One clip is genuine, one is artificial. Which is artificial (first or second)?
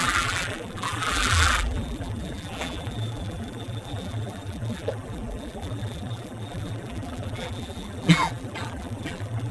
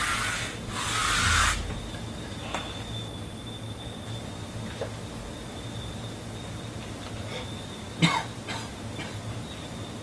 first